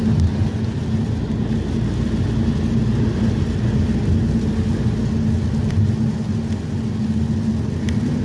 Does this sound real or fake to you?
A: real